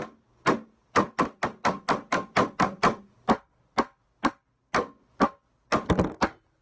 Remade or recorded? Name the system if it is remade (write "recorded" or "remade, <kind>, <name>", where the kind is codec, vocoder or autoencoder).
recorded